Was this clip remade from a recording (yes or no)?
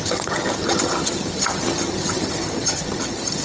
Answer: yes